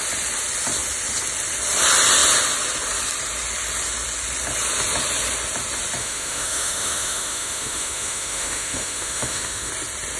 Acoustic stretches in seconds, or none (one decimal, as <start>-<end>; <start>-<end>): 0.0-6.0; 9.7-10.2